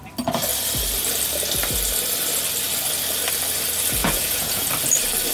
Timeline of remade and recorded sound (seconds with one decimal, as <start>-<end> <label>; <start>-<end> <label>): 0.0-4.0 recorded; 4.0-4.7 remade; 4.7-5.3 recorded